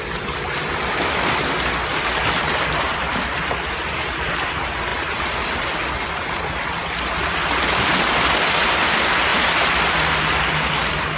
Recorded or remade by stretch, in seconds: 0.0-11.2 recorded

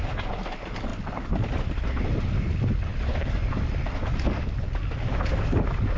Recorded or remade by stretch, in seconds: 0.0-6.0 recorded